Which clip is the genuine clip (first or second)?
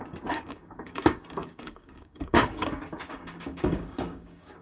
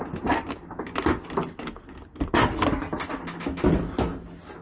second